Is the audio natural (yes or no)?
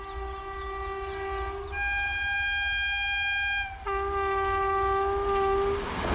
yes